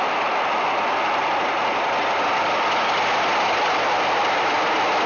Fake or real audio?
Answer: real